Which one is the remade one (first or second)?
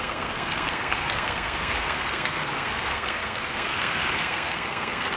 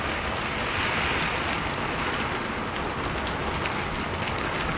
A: first